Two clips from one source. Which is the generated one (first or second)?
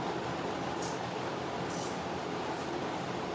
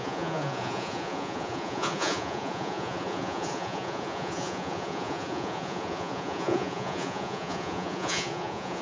second